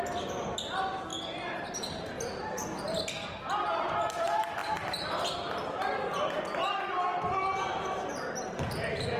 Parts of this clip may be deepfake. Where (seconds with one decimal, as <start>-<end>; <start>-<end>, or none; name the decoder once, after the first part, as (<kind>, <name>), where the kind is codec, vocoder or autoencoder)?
7.3-8.2 (vocoder, BigVGAN v2)